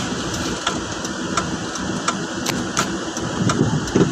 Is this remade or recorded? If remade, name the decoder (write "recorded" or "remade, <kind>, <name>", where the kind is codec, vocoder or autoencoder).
recorded